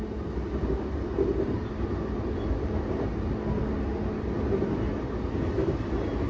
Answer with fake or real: real